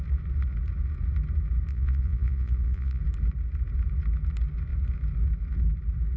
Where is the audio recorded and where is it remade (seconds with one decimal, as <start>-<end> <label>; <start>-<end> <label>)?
0.0-1.7 recorded; 1.7-3.0 remade; 3.0-6.2 recorded